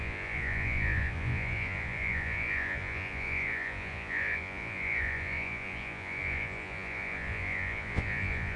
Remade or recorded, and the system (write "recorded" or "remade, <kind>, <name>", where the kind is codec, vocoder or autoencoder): remade, vocoder, Vocos